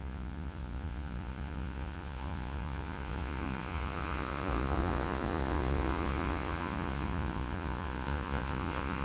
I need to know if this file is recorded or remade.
remade